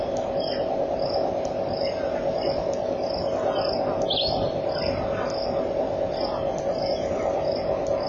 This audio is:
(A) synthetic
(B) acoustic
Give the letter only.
B